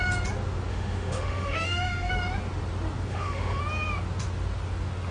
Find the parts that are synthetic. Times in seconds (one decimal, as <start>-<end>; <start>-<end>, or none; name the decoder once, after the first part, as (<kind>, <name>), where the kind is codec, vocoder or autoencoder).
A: 0.7-2.1 (autoencoder, DAC-VAE); 3.1-3.6